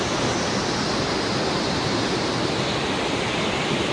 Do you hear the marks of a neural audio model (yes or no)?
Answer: no